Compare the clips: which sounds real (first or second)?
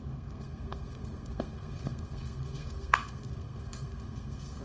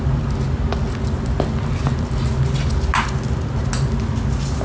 second